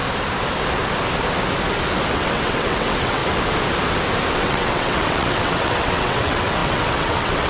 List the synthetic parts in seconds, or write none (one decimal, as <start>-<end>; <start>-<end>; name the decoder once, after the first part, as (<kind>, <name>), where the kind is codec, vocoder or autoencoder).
2.1-3.2 (vocoder, WaveNeXt); 4.3-7.5